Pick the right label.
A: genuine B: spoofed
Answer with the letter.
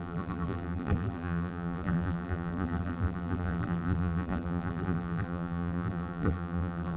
B